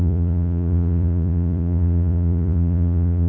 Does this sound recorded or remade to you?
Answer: remade